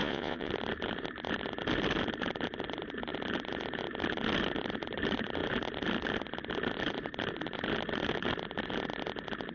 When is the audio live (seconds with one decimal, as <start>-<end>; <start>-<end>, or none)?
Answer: 0.5-9.5